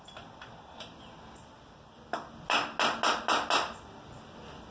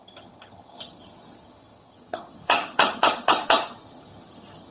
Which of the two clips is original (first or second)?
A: first